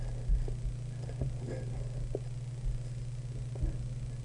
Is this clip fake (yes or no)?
no